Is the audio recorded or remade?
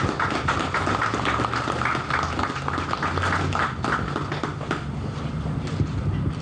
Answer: recorded